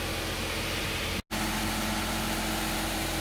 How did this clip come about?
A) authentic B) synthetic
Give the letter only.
A